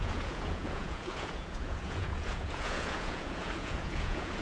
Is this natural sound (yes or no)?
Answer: no